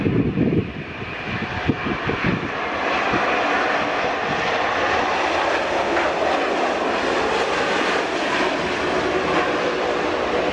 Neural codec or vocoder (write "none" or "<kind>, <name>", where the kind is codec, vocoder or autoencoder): none